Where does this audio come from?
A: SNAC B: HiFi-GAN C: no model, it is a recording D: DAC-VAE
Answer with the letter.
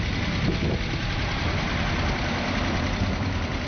C